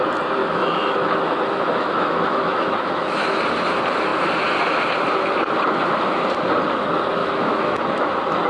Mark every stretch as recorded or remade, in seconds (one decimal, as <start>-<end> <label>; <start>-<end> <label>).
0.0-0.4 recorded; 0.4-3.4 remade; 3.4-7.2 recorded; 7.2-8.1 remade; 8.1-8.5 recorded